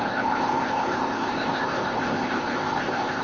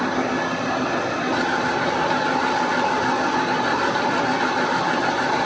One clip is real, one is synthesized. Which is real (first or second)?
second